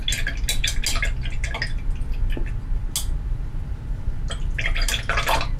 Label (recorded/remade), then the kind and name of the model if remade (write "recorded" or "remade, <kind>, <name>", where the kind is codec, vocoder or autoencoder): recorded